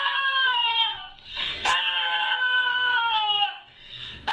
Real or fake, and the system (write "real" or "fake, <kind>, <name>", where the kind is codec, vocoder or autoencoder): fake, codec, SNAC